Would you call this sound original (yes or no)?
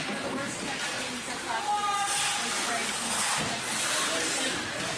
yes